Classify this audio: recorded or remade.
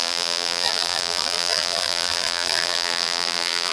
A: remade